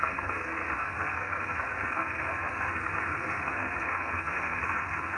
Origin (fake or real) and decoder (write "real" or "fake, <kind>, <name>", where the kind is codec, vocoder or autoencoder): fake, codec, SNAC